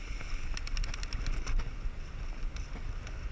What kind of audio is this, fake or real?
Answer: real